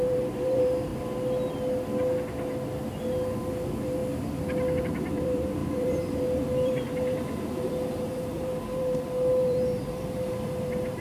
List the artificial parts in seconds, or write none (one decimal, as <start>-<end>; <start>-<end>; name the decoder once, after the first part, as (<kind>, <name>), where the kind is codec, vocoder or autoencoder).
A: 0.0-0.9 (vocoder, BigVGAN v2); 3.0-4.0; 4.8-11.0